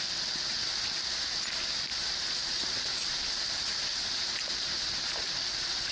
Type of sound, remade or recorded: recorded